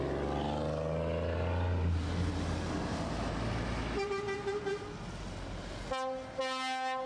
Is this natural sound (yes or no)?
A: yes